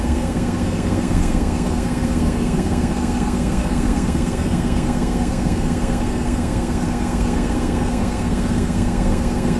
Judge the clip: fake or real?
fake